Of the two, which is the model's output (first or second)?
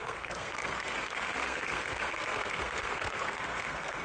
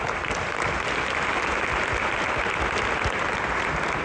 first